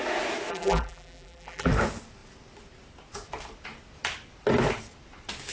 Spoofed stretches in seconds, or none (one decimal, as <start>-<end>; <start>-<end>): 0.5-1.7